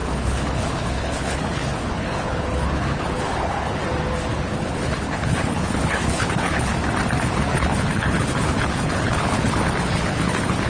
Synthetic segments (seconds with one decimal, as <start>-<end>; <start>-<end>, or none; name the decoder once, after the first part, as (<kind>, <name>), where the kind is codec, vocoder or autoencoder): 0.0-3.8 (codec, HILCodec); 4.3-6.7; 7.5-10.7